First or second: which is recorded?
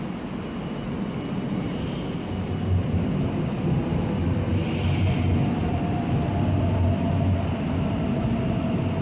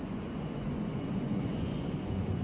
first